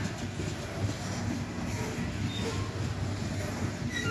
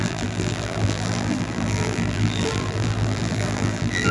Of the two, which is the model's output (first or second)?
second